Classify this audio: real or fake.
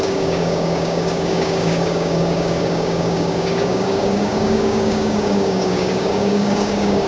fake